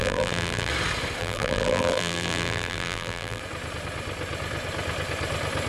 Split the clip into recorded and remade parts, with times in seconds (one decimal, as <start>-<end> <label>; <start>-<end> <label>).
0.0-0.7 remade; 0.7-1.2 recorded; 1.2-3.4 remade; 3.4-5.7 recorded